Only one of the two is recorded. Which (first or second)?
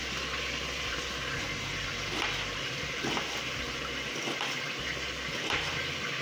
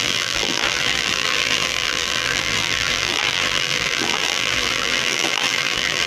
first